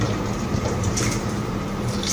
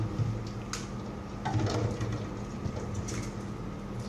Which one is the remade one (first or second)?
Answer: first